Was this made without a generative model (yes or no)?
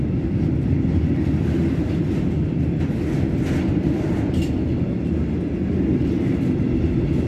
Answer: yes